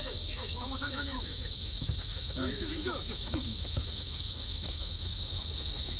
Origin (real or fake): fake